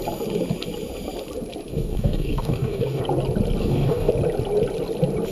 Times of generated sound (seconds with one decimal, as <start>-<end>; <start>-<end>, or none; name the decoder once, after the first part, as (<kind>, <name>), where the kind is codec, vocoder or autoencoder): 1.7-3.0 (codec, DAC); 3.6-4.1